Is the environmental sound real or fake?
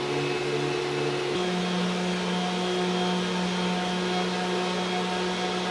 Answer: real